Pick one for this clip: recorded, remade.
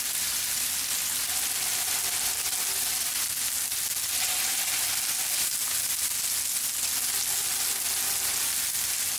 recorded